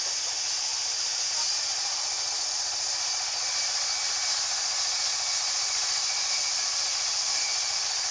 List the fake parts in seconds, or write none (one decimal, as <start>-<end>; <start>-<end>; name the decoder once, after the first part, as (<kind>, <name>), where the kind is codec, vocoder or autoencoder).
0.7-1.2 (vocoder, BigVGAN v2)